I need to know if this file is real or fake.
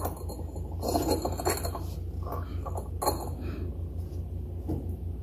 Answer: real